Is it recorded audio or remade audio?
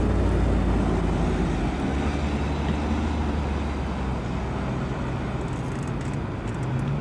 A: recorded